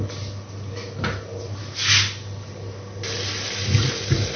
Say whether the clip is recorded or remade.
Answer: recorded